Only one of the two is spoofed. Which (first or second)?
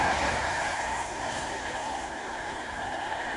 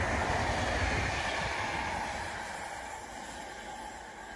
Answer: first